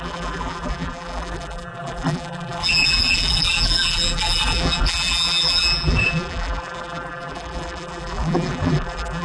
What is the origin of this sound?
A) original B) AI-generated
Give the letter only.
B